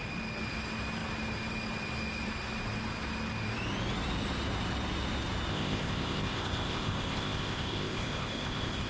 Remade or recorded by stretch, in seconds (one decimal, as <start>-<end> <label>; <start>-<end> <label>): 0.0-5.5 recorded; 5.5-8.9 remade